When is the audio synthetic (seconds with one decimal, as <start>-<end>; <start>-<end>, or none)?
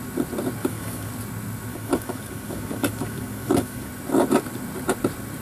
0.6-1.1; 1.7-3.9